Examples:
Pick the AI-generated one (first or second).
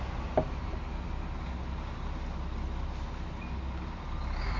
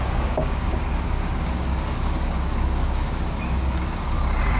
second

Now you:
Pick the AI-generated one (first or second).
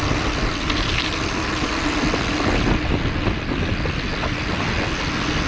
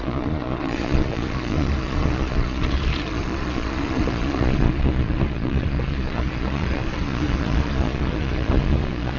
second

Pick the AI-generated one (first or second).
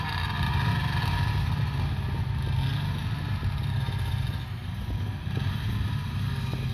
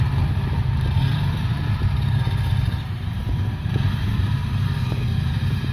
second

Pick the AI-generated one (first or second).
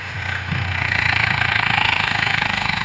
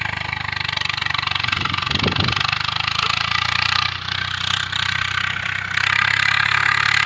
first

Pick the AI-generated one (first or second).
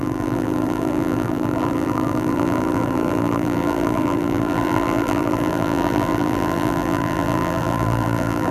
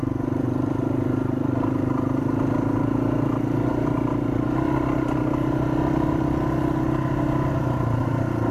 first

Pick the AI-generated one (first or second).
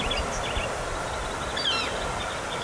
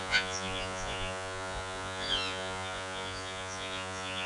second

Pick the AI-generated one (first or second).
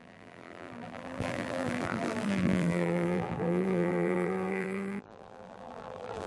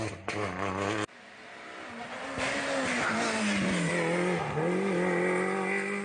first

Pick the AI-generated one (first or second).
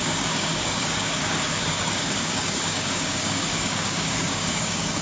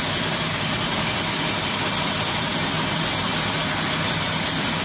first